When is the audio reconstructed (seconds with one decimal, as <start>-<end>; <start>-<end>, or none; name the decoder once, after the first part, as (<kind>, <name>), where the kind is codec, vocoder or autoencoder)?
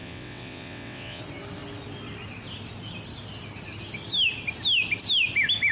0.0-1.2 (vocoder, WaveNeXt)